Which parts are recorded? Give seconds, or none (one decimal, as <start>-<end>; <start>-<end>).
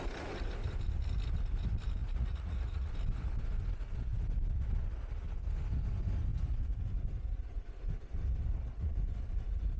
0.0-2.0; 2.9-9.8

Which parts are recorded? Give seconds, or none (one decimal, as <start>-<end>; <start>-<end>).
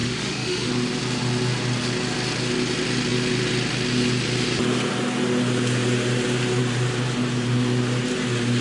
0.7-8.6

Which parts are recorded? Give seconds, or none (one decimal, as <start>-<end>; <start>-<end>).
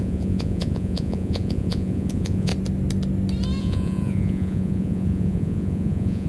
2.5-3.6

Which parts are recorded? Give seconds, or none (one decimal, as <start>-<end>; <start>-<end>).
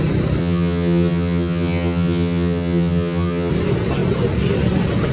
0.0-0.4; 3.5-5.1